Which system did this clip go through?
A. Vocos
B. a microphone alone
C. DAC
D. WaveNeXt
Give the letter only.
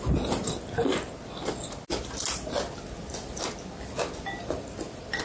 B